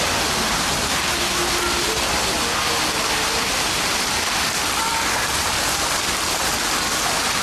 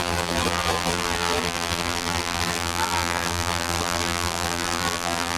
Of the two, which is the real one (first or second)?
first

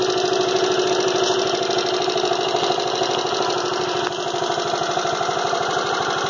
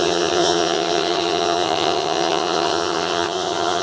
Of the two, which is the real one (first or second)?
first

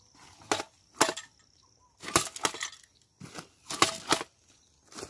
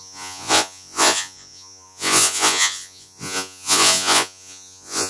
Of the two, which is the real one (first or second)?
first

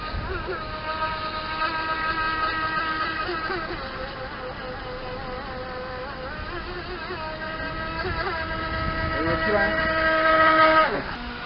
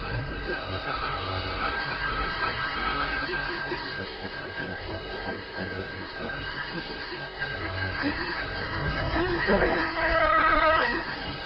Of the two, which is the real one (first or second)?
first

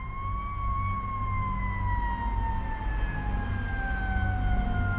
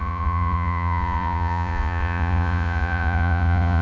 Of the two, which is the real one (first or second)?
first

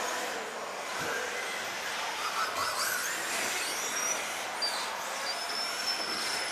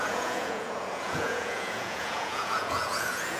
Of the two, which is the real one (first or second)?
first